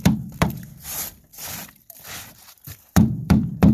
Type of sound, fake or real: fake